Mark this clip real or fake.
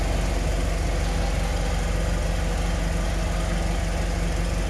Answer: real